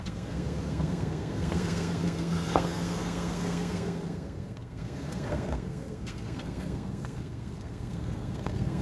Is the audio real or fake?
fake